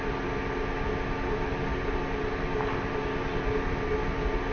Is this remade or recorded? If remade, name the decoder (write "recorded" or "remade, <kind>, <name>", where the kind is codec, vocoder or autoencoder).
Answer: recorded